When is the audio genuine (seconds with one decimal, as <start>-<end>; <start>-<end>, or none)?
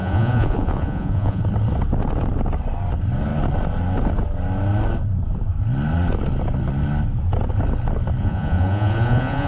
1.4-8.2